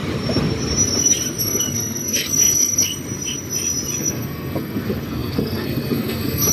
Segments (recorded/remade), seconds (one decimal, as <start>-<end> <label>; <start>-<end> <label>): 0.0-1.4 recorded; 1.4-2.9 remade; 2.9-4.0 recorded; 4.0-6.5 remade